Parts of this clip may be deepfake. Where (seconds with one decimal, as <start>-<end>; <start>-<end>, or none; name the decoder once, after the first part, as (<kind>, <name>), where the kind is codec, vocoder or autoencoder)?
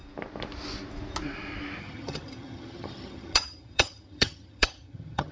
1.8-5.3 (vocoder, HiFi-GAN)